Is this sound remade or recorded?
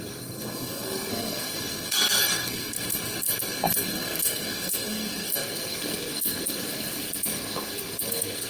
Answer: remade